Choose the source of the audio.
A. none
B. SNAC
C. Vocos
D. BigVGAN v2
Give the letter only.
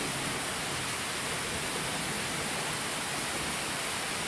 A